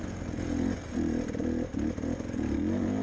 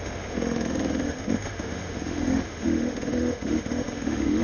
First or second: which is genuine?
first